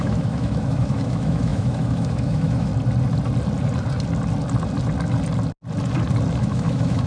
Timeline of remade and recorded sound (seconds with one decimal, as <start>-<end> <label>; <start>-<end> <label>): 0.0-2.7 remade; 2.7-6.4 recorded; 6.4-7.1 remade